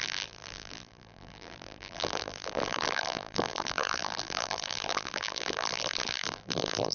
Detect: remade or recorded remade